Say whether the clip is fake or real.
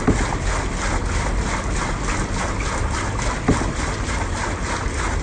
real